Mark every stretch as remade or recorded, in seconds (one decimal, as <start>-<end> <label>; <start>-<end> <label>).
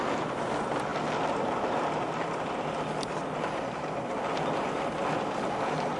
0.0-6.0 recorded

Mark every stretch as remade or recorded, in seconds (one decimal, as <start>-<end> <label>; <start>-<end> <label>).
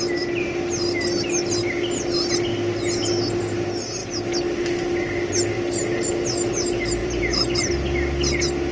0.0-7.0 recorded; 7.0-7.7 remade; 7.7-8.7 recorded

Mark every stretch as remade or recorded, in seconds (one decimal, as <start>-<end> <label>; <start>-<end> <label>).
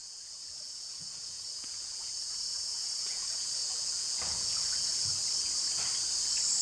0.0-5.1 remade; 5.1-6.6 recorded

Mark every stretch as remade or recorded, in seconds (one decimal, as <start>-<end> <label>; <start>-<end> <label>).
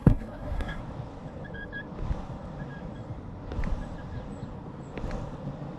0.0-0.8 remade; 0.8-5.8 recorded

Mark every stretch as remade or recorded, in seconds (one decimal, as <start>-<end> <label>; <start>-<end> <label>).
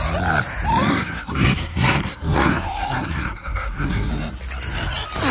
0.0-0.9 recorded; 0.9-4.1 remade; 4.1-5.3 recorded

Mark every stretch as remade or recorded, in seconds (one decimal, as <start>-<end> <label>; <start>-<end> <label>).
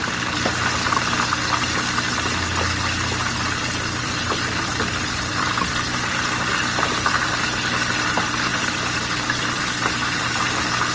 0.0-4.0 recorded; 4.0-4.7 remade; 4.7-5.3 recorded; 5.3-6.5 remade; 6.5-8.5 recorded; 8.5-9.6 remade; 9.6-10.9 recorded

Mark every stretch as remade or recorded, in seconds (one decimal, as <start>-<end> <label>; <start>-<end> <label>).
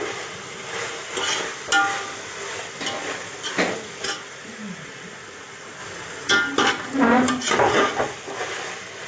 0.0-9.1 recorded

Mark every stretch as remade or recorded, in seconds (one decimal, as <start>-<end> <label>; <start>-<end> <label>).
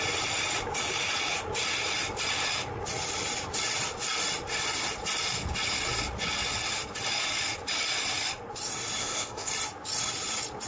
0.0-9.0 recorded; 9.0-9.5 remade; 9.5-10.7 recorded